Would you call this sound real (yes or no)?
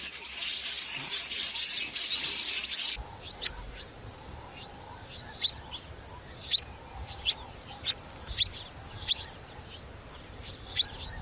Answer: yes